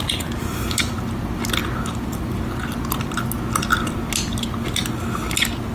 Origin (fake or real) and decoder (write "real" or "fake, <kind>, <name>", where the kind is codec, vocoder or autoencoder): real